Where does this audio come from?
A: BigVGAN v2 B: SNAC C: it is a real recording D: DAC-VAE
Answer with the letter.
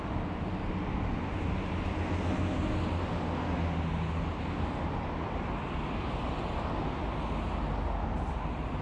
C